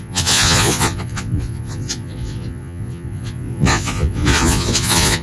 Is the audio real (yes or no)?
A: no